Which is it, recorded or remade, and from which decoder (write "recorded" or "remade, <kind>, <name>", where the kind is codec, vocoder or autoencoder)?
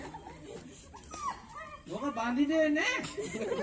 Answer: recorded